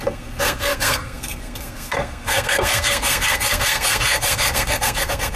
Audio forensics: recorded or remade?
remade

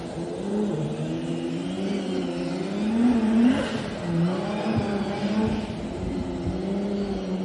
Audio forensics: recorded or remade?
recorded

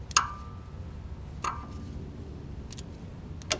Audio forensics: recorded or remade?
recorded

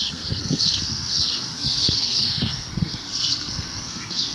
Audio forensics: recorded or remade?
remade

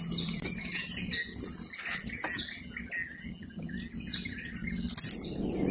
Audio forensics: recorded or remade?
recorded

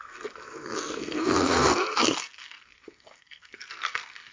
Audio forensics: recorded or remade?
remade